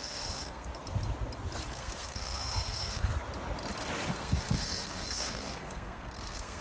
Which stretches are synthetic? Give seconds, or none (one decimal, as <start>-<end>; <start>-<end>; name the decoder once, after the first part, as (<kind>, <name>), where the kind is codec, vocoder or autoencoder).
0.0-0.7 (codec, SNAC); 1.7-3.1; 4.1-6.6